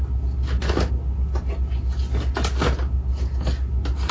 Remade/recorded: recorded